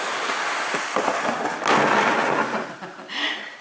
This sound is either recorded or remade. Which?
recorded